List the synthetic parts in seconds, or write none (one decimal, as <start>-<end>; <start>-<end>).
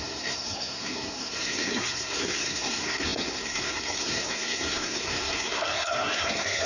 0.0-6.7